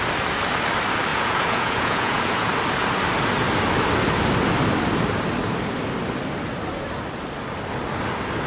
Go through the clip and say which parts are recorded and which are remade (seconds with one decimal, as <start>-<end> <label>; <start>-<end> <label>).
0.0-1.1 recorded; 1.1-2.5 remade; 2.5-8.5 recorded